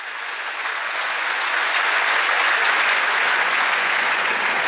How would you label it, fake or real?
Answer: fake